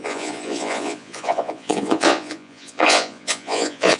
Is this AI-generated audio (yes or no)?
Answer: yes